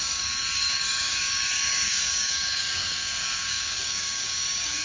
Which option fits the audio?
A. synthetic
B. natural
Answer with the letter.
A